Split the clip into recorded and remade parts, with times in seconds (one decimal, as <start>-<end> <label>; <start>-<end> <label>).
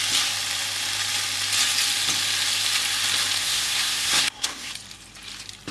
0.0-3.4 recorded; 3.4-4.7 remade; 4.7-5.7 recorded